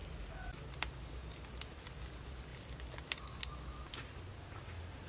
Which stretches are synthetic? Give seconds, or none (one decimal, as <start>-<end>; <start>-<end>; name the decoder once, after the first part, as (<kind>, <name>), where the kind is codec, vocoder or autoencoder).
none